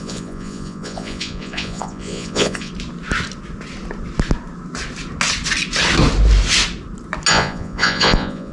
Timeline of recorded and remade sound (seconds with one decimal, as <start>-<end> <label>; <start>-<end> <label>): 0.0-2.7 remade; 2.7-7.3 recorded; 7.3-8.5 remade